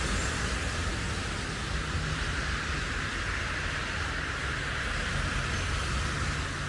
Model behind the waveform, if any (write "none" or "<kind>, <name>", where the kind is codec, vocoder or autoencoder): none